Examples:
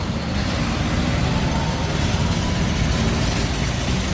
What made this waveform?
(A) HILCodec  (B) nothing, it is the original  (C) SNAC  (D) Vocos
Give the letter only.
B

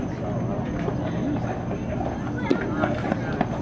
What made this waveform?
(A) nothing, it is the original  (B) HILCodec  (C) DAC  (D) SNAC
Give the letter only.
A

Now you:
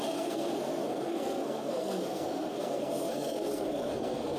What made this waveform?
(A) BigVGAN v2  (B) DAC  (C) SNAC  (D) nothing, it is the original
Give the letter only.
C